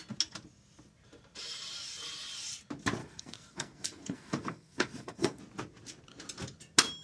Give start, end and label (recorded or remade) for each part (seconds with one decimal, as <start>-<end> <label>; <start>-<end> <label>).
0.0-3.0 recorded; 3.0-5.4 remade; 5.4-7.0 recorded